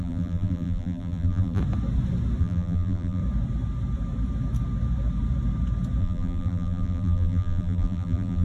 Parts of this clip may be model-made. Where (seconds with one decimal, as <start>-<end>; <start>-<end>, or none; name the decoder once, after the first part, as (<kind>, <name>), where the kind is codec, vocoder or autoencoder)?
0.0-1.6 (vocoder, BigVGAN v2); 2.4-3.2; 6.0-8.4